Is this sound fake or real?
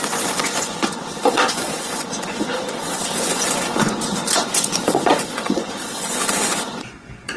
fake